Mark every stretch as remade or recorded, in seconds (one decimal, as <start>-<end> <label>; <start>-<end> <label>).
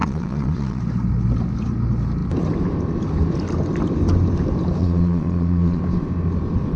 0.0-0.8 remade; 0.8-4.8 recorded; 4.8-5.8 remade; 5.8-6.8 recorded